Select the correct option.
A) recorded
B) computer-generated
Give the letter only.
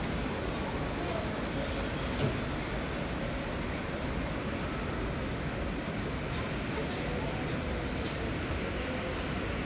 A